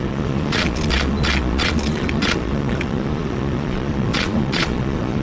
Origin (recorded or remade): remade